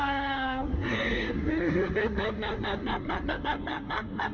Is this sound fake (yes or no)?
yes